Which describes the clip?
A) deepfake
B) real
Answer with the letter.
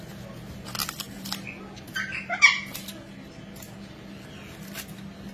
B